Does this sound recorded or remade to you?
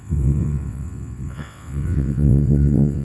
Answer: remade